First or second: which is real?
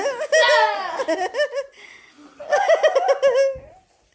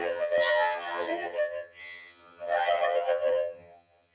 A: first